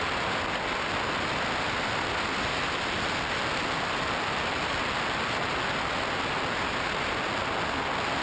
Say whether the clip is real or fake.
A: real